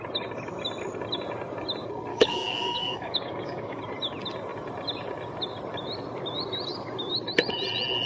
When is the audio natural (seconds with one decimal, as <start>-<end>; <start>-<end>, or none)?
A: 0.0-2.1; 3.8-8.1